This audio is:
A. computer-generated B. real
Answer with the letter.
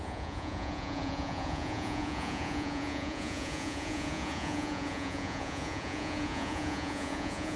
A